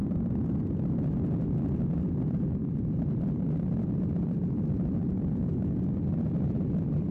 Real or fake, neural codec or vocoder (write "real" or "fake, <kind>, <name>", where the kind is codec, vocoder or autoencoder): fake, vocoder, BigVGAN v2